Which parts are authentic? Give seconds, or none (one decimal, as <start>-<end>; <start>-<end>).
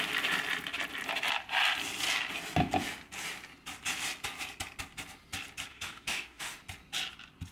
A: 0.0-5.7; 6.6-7.5